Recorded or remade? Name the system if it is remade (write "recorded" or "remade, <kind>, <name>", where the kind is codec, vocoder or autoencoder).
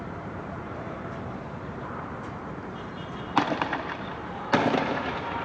remade, vocoder, BigVGAN v2